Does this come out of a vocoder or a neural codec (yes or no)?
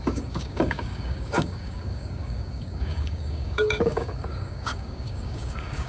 yes